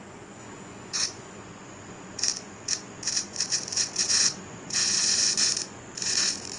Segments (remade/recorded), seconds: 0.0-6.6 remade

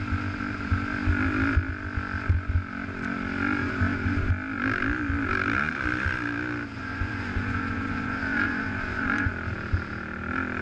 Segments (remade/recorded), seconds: 0.0-3.6 recorded; 3.6-4.3 remade; 4.3-6.8 recorded; 6.8-9.3 remade; 9.3-10.6 recorded

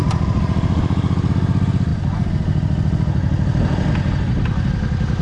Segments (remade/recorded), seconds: 0.0-5.2 recorded

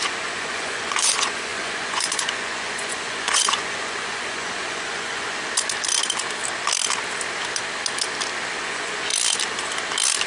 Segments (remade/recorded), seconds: 0.0-5.4 remade; 5.4-8.6 recorded; 8.6-9.1 remade; 9.1-10.3 recorded

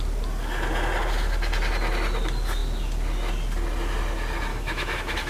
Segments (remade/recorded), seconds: 0.0-4.5 recorded; 4.5-5.3 remade